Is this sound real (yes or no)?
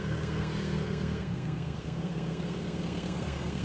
no